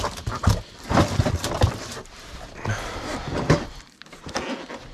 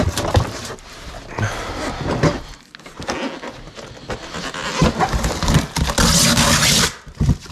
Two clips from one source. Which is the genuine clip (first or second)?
second